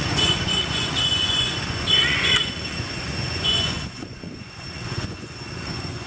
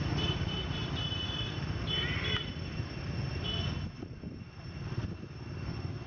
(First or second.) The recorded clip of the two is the second